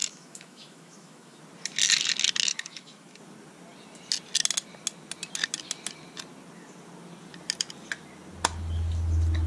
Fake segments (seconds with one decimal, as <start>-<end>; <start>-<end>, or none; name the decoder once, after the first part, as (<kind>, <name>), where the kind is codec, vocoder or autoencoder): 0.0-1.4 (autoencoder, DAC-VAE); 2.5-3.2